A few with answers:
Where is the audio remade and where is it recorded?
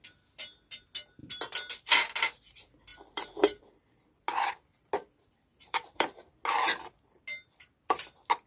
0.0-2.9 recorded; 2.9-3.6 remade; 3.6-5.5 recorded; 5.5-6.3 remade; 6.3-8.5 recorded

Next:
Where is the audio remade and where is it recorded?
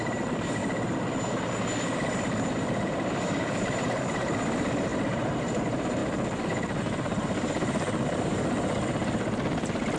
0.0-0.6 remade; 0.6-3.1 recorded; 3.1-6.0 remade; 6.0-6.8 recorded; 6.8-8.3 remade; 8.3-9.6 recorded; 9.6-10.0 remade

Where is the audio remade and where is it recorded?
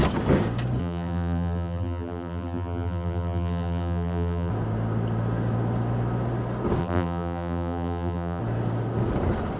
0.0-0.8 recorded; 0.8-4.5 remade; 4.5-6.8 recorded; 6.8-8.4 remade; 8.4-9.6 recorded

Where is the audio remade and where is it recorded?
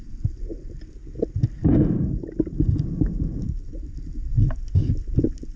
0.0-5.6 recorded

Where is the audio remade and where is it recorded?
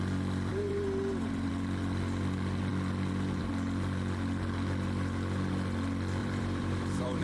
0.0-0.5 recorded; 0.5-1.5 remade; 1.5-6.2 recorded; 6.2-7.2 remade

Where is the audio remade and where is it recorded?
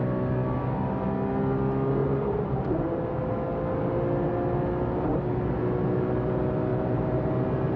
0.0-2.0 recorded; 2.0-3.0 remade; 3.0-6.7 recorded; 6.7-7.3 remade; 7.3-7.8 recorded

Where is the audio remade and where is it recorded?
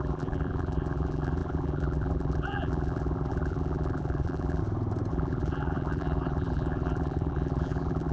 0.0-4.6 remade; 4.6-5.1 recorded; 5.1-8.1 remade